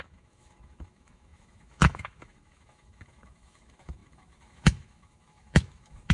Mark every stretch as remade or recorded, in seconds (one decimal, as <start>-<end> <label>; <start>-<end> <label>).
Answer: 0.0-6.1 remade